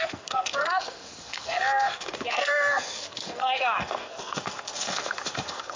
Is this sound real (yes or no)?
no